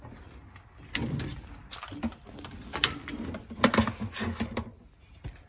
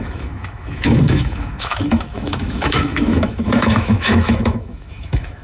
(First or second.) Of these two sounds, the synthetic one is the second